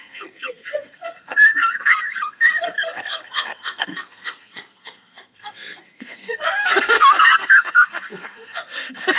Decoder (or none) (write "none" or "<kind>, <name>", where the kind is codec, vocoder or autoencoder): codec, SNAC